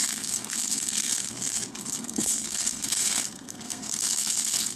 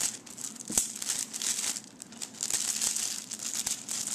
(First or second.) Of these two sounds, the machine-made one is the first